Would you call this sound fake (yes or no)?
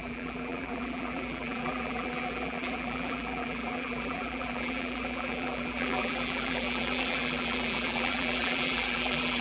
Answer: yes